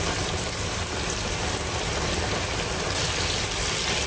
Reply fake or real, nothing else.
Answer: real